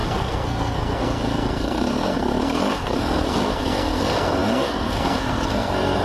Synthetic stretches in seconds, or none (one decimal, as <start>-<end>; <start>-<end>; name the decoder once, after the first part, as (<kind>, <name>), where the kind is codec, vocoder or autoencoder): 0.0-6.0 (codec, SNAC)